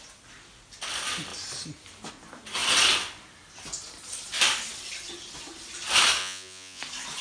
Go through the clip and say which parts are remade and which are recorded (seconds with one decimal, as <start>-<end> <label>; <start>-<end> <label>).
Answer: 0.0-6.2 recorded; 6.2-6.8 remade; 6.8-7.2 recorded